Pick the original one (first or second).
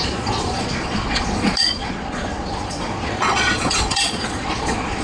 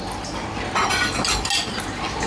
second